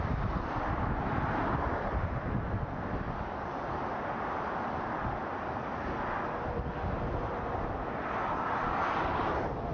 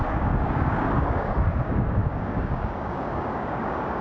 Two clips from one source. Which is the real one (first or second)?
first